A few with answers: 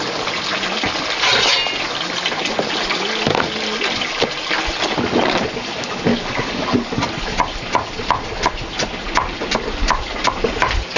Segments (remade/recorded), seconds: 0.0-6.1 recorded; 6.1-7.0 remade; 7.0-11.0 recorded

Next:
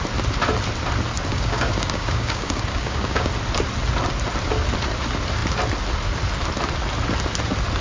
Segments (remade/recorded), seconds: 0.0-1.3 recorded; 1.3-3.3 remade; 3.3-7.8 recorded

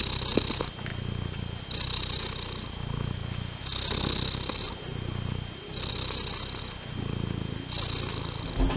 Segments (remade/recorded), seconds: 0.0-8.8 recorded